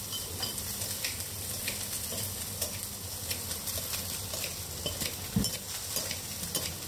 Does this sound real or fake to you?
real